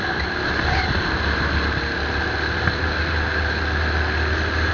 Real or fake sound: real